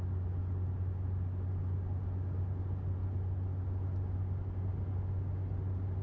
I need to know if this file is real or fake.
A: real